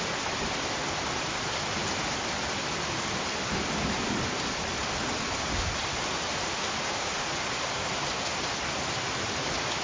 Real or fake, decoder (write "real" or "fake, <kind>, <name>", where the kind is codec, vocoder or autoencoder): fake, vocoder, BigVGAN v2